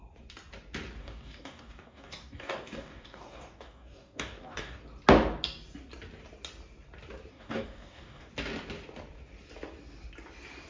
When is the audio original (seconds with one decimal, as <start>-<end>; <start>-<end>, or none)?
0.0-1.0; 4.8-7.3; 8.3-10.7